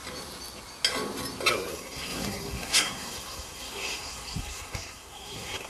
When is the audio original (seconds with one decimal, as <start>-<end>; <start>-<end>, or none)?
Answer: 0.0-1.5